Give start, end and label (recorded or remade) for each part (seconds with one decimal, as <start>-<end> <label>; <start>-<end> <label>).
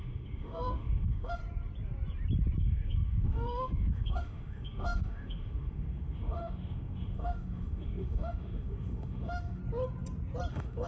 0.0-1.4 remade; 1.4-2.6 recorded; 2.6-9.6 remade; 9.6-10.5 recorded; 10.5-10.9 remade